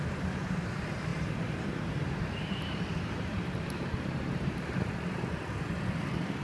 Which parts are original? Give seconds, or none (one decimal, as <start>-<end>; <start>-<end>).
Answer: 0.0-1.1; 4.9-6.4